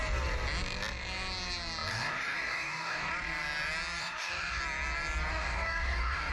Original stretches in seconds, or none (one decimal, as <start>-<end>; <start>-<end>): 0.0-1.9; 3.1-4.0; 4.6-5.3